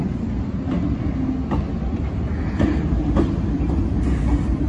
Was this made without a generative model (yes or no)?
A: yes